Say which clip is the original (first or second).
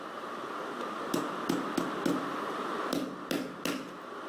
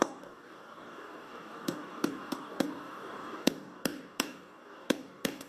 first